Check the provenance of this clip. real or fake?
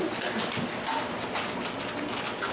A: real